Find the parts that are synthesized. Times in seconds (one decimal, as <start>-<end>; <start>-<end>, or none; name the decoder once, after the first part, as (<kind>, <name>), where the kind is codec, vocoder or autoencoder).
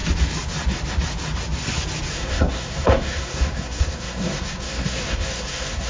2.1-5.9 (codec, SNAC)